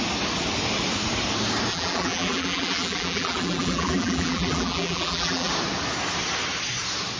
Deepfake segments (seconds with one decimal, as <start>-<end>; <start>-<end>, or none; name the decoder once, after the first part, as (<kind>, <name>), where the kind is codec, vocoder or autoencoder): 1.7-5.5 (vocoder, BigVGAN v2)